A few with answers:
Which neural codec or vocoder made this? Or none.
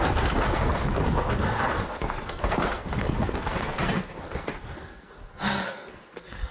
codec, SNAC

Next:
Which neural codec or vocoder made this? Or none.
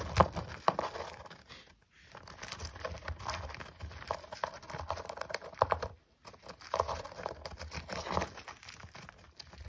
none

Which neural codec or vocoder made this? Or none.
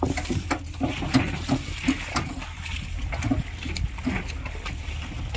none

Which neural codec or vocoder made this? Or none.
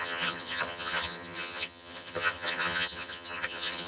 vocoder, HiFi-GAN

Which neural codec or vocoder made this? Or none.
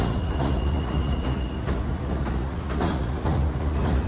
vocoder, Vocos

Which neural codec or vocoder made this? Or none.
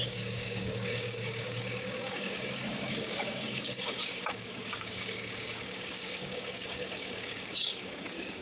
codec, DAC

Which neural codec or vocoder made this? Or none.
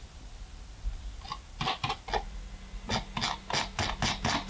none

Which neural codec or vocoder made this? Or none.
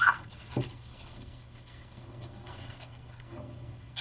codec, SNAC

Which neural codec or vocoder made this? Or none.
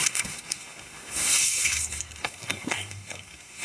codec, SNAC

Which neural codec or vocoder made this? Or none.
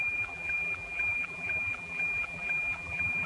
vocoder, BigVGAN v2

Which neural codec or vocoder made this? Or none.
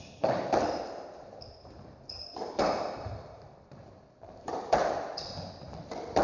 none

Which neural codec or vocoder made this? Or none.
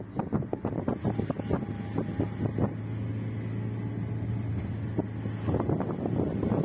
none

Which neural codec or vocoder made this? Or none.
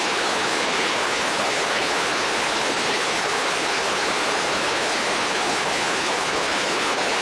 codec, HILCodec